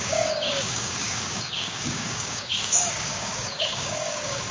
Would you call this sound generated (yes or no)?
yes